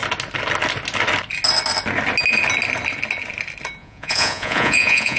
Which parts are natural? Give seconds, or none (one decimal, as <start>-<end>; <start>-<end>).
0.0-3.8